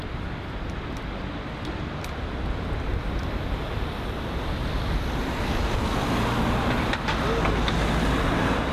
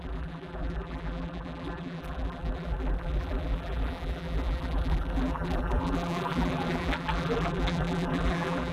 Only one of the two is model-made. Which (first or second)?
second